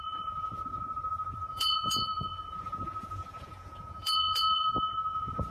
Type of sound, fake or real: fake